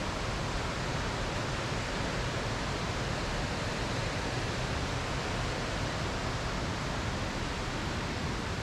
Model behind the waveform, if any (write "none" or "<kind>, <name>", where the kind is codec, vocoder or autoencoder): none